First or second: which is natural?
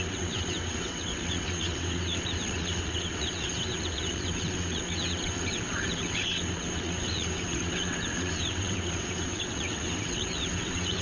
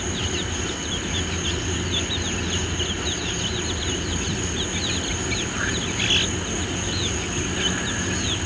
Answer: second